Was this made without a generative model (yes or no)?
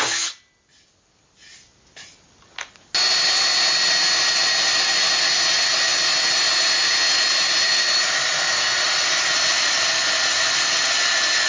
yes